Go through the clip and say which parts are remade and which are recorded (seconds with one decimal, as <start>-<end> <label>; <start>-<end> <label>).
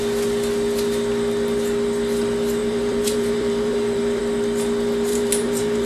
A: 0.0-2.6 recorded; 2.6-4.2 remade; 4.2-5.1 recorded; 5.1-5.9 remade